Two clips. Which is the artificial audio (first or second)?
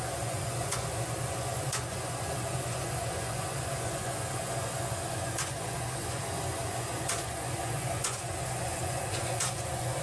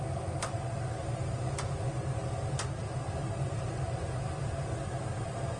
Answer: first